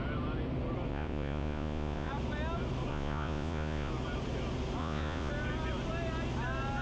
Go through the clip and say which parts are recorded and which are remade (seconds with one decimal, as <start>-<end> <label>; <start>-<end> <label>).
0.0-0.9 recorded; 0.9-2.1 remade; 2.1-2.9 recorded; 2.9-3.9 remade; 3.9-4.8 recorded; 4.8-5.3 remade; 5.3-6.8 recorded